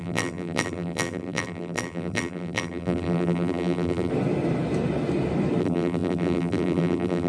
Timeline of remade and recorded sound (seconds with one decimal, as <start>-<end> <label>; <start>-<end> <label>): 0.0-4.1 remade; 4.1-5.6 recorded; 5.6-7.3 remade

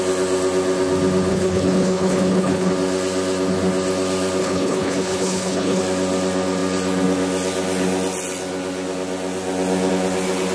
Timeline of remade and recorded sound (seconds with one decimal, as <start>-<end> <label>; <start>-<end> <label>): 0.0-1.3 recorded; 1.3-2.7 remade; 2.7-4.4 recorded; 4.4-5.8 remade; 5.8-10.5 recorded

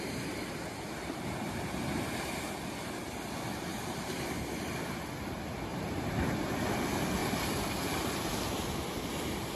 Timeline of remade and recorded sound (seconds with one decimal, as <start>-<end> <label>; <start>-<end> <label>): 0.0-3.7 recorded; 3.7-4.5 remade; 4.5-5.7 recorded; 5.7-6.2 remade; 6.2-7.2 recorded; 7.2-8.3 remade; 8.3-9.6 recorded

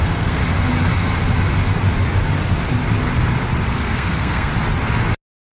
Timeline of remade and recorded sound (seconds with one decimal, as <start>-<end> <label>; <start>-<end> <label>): 0.0-0.4 remade; 0.4-3.7 recorded; 3.7-4.5 remade; 4.5-5.5 recorded

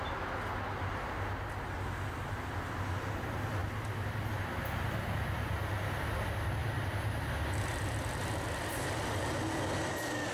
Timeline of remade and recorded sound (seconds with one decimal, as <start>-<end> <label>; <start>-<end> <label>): 0.0-10.3 recorded

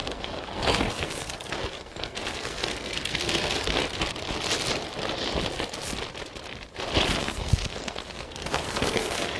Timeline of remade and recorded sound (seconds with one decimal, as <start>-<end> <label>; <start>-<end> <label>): 0.0-3.8 remade; 3.8-7.2 recorded; 7.2-9.4 remade

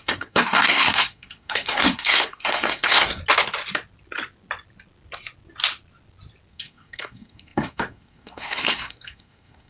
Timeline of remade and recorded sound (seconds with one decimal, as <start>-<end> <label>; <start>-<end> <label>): 0.0-3.2 remade; 3.2-6.5 recorded; 6.5-9.7 remade

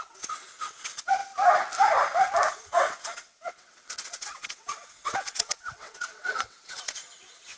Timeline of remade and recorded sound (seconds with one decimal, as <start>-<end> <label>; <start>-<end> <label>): 0.0-1.2 remade; 1.2-2.5 recorded; 2.5-7.6 remade